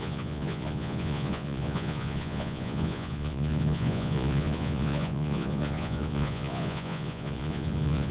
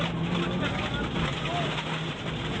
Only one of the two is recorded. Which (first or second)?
second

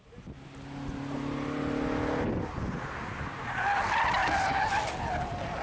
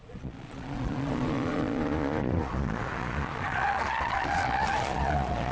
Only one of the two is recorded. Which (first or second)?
first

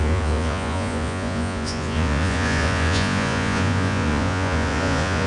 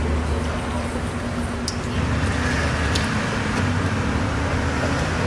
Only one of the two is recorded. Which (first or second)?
second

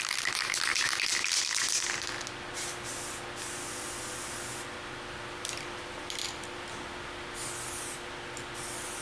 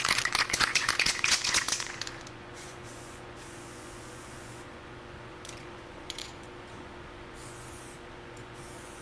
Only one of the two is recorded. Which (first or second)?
first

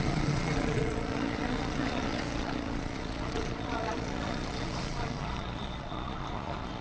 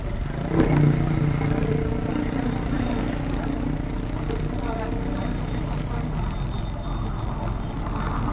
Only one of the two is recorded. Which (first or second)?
second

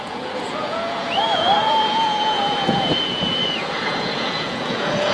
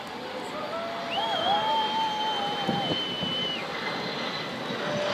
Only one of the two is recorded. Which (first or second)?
second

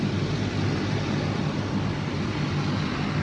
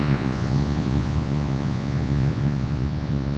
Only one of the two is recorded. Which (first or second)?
first